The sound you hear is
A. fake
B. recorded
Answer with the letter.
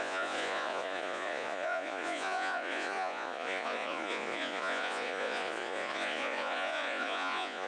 A